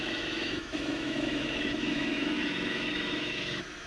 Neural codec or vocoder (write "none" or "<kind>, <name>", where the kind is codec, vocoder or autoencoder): autoencoder, DAC-VAE